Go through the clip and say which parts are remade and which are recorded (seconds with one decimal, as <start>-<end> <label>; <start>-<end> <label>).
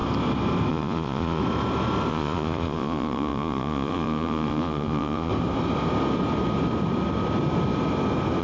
0.0-0.7 recorded; 0.7-1.4 remade; 1.4-2.1 recorded; 2.1-5.3 remade; 5.3-8.4 recorded